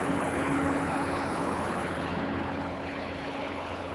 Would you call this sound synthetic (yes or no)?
yes